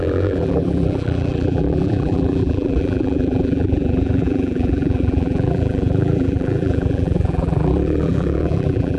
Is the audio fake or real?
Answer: fake